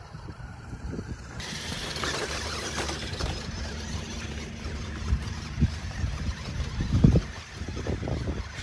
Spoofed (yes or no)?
yes